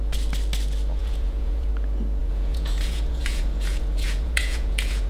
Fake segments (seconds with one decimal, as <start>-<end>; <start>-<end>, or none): 1.0-1.7; 2.2-5.1